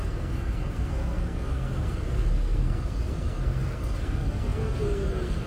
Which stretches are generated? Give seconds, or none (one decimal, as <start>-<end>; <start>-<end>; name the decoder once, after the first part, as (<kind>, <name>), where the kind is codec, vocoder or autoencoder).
0.0-5.5 (codec, SNAC)

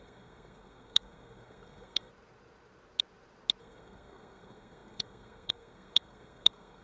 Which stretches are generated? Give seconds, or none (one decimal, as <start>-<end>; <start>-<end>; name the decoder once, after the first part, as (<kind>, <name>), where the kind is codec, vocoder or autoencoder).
0.0-2.1 (codec, SNAC); 3.6-6.8

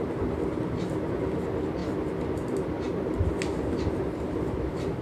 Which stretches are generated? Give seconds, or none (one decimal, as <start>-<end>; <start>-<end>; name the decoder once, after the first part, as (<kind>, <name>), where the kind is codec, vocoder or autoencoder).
none

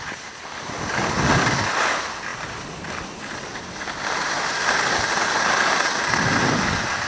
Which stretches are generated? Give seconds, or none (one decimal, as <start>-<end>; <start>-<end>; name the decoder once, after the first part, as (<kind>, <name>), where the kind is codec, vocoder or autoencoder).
2.3-2.8 (vocoder, BigVGAN v2)

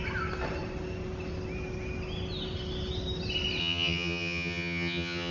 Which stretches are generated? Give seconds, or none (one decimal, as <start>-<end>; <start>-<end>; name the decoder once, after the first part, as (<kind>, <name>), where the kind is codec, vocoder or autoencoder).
3.6-5.3 (vocoder, HiFi-GAN)

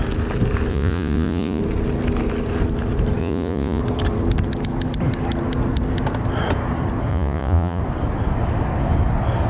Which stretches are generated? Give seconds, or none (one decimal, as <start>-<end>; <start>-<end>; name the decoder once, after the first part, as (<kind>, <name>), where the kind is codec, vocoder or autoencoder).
0.7-1.6 (vocoder, Vocos); 3.2-3.8; 7.1-7.8